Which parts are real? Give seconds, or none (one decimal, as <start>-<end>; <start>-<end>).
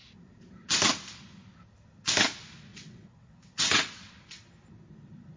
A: 0.0-2.7; 4.1-5.4